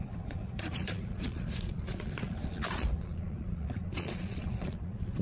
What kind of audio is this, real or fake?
fake